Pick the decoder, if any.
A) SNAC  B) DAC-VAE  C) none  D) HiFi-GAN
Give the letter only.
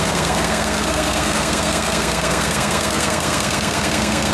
A